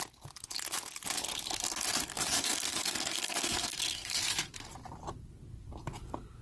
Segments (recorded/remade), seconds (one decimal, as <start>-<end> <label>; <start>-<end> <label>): 0.0-2.1 recorded; 2.1-4.2 remade; 4.2-6.4 recorded